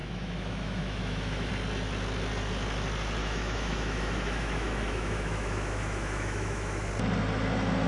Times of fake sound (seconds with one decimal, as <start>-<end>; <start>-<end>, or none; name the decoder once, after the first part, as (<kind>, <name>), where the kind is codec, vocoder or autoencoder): 0.0-1.5 (autoencoder, DAC-VAE); 3.2-6.9